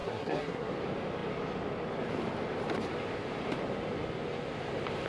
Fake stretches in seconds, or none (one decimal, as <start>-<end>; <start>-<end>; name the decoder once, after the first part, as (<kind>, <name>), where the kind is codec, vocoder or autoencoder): 0.0-0.7 (codec, SNAC)